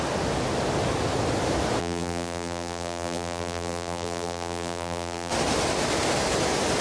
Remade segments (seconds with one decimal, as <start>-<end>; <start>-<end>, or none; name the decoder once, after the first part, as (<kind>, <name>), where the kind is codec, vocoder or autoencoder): 1.8-5.3 (vocoder, BigVGAN v2)